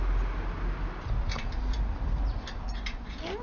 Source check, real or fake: real